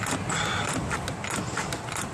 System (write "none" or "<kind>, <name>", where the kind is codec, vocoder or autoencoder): none